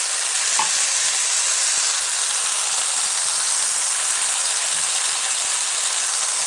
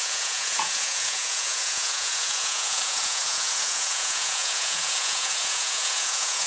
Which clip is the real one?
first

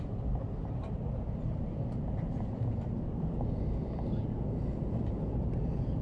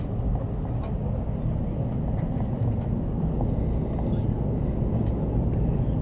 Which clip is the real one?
second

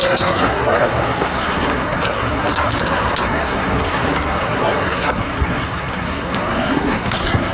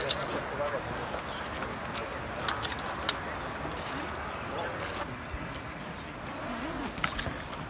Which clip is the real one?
second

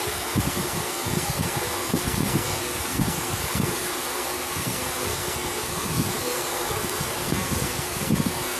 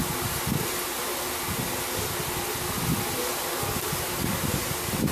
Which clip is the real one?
second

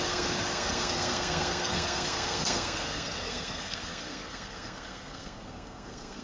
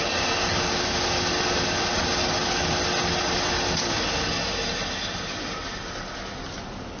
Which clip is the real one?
second